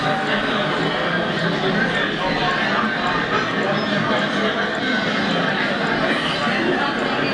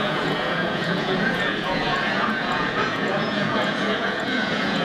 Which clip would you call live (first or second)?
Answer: first